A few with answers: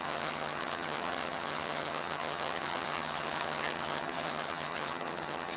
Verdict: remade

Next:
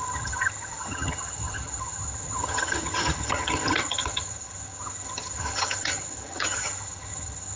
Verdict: remade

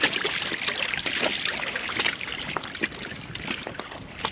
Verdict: recorded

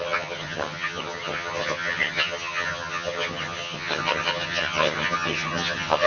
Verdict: remade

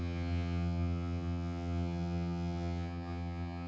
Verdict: remade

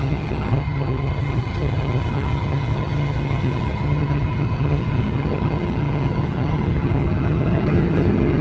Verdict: remade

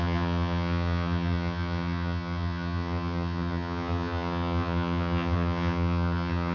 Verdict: remade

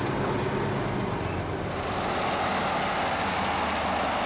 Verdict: recorded